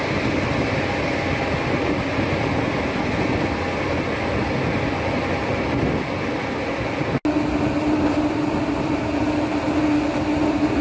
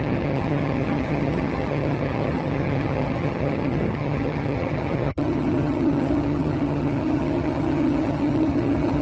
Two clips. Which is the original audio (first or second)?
first